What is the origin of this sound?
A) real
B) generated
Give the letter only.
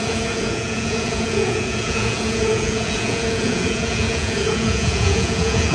B